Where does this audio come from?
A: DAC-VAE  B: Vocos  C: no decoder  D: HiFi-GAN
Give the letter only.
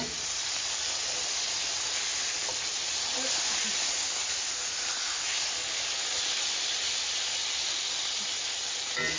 C